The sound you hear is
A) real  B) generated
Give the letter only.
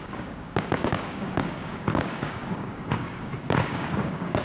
B